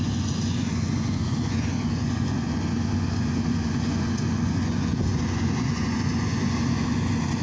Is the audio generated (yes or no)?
yes